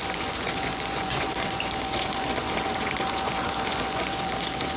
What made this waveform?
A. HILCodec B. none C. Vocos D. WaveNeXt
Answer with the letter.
C